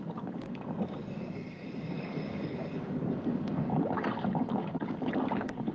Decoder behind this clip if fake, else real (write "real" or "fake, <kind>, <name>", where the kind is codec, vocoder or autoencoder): fake, codec, DAC